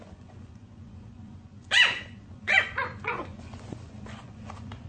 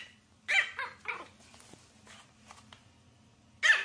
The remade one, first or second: first